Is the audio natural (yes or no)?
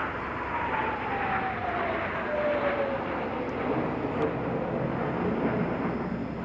yes